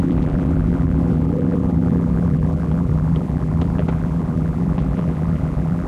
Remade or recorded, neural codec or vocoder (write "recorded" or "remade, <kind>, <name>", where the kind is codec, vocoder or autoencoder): remade, vocoder, BigVGAN v2